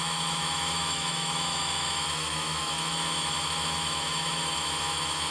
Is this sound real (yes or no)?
no